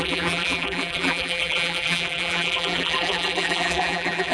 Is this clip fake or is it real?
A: fake